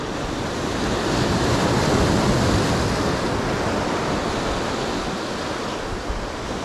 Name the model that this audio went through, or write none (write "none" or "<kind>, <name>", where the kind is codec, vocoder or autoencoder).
none